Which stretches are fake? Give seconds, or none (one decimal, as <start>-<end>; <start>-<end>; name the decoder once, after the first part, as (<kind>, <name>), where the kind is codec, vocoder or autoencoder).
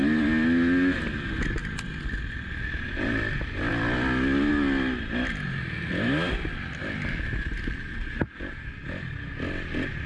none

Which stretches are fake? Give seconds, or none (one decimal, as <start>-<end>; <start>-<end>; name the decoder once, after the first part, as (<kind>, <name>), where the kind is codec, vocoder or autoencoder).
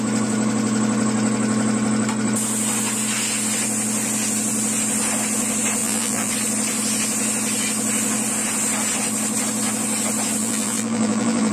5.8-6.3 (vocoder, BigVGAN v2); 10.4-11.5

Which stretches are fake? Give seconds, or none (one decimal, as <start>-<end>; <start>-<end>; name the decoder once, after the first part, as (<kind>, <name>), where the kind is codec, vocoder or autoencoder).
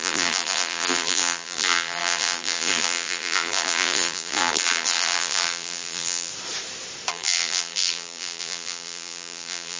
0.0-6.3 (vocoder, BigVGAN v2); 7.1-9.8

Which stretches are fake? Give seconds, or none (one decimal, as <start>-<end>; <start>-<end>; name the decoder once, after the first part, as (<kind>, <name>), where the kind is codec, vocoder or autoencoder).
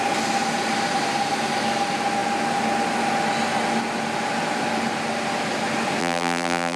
6.0-6.8 (vocoder, BigVGAN v2)